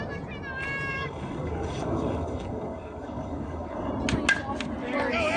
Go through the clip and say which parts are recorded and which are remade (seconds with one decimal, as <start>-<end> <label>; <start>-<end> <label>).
0.0-0.9 recorded; 0.9-3.9 remade; 3.9-5.4 recorded